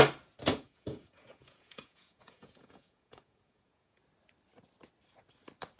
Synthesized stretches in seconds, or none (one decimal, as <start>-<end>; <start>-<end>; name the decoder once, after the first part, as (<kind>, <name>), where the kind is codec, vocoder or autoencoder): 0.5-4.0 (vocoder, Vocos)